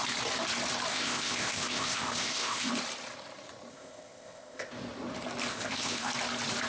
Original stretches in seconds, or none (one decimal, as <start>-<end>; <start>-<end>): 0.0-0.9; 2.7-3.7; 4.7-5.5; 6.1-6.7